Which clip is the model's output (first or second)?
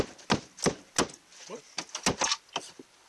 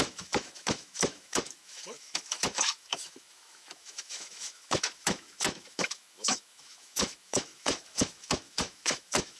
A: second